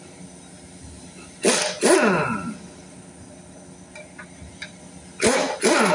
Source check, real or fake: real